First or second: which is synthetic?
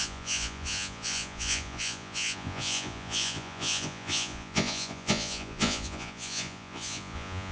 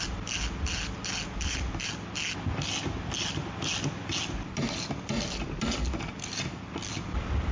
first